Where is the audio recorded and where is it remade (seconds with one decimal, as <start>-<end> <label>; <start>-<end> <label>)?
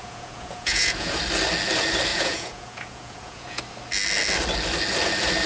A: 0.0-1.2 remade; 1.2-2.1 recorded; 2.1-3.6 remade; 3.6-5.5 recorded